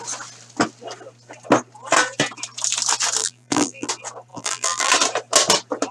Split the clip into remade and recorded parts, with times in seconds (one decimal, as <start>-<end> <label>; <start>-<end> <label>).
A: 0.0-3.2 recorded; 3.2-3.9 remade; 3.9-4.3 recorded; 4.3-4.9 remade; 4.9-5.9 recorded